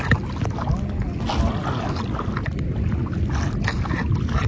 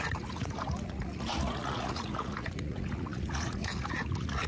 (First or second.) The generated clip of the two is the second